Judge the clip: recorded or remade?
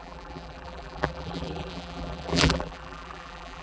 remade